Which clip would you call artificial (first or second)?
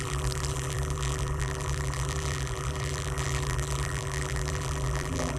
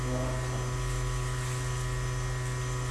first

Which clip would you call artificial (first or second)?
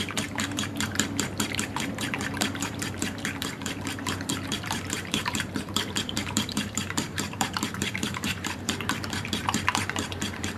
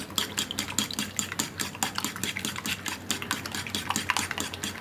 first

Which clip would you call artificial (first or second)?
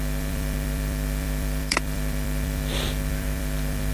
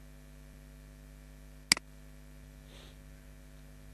first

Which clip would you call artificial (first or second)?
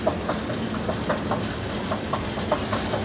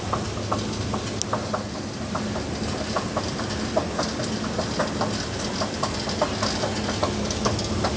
first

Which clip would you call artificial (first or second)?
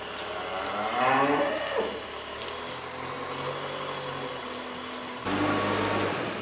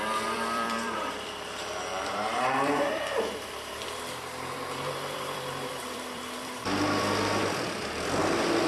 second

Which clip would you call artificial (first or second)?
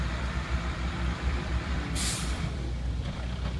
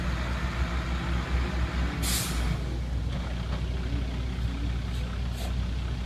first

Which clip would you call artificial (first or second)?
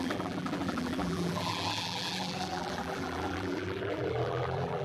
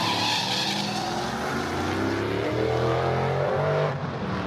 first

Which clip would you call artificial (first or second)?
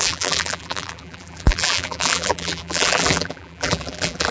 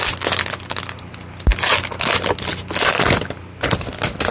first